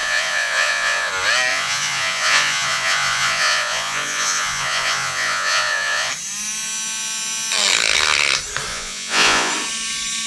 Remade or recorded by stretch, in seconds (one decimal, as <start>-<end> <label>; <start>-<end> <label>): 0.0-1.1 remade; 1.1-1.5 recorded; 1.5-6.1 remade; 6.1-8.7 recorded; 8.7-9.5 remade; 9.5-10.3 recorded